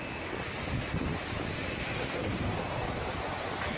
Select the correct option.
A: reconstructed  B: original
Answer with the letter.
B